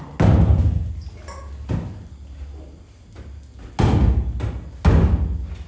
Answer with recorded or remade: recorded